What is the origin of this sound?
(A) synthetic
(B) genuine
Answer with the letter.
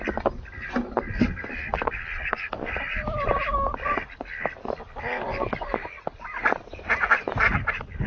B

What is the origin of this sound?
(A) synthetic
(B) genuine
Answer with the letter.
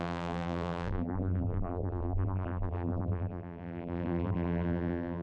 A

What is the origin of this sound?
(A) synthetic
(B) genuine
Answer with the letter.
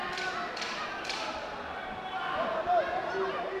B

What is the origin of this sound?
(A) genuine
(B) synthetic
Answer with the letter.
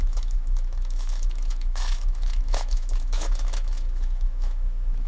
B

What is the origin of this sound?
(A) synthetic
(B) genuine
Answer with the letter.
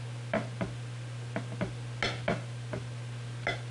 B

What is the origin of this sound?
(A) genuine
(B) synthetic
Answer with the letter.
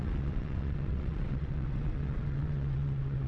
B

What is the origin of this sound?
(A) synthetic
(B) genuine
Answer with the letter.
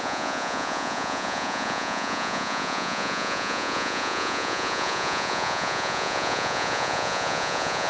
A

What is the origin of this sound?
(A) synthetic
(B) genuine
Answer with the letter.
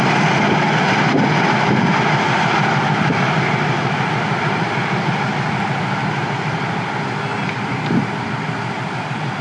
B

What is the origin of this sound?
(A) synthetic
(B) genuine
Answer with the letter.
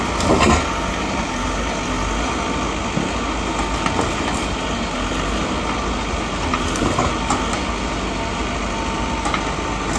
B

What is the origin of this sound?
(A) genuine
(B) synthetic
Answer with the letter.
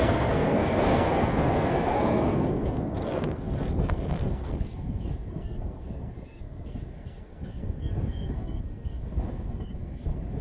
B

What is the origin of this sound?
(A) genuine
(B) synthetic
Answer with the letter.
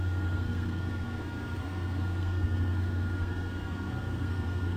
B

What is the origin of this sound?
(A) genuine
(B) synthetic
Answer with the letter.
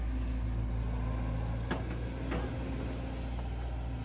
A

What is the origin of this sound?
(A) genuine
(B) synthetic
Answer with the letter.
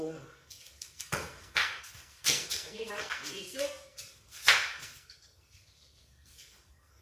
B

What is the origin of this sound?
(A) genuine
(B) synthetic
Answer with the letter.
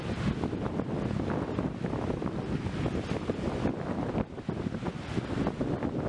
A